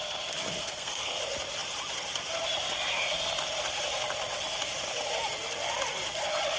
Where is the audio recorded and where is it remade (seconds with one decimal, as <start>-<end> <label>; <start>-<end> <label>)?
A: 0.0-0.6 recorded; 0.6-1.2 remade; 1.2-6.6 recorded